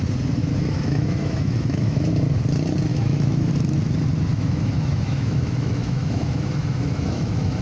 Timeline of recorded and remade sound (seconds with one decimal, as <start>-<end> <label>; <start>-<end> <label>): 0.0-0.4 recorded; 0.4-2.1 remade; 2.1-2.9 recorded; 2.9-3.5 remade; 3.5-4.3 recorded; 4.3-7.6 remade